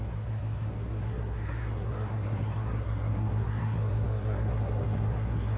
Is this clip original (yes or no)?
no